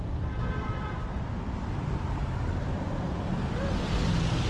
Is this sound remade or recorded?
remade